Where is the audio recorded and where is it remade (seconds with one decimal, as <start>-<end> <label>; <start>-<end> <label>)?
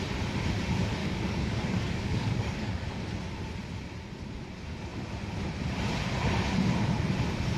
0.0-1.0 recorded; 1.0-3.0 remade; 3.0-7.6 recorded